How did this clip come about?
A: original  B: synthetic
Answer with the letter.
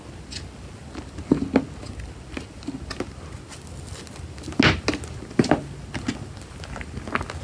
A